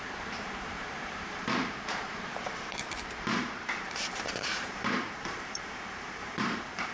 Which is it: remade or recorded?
remade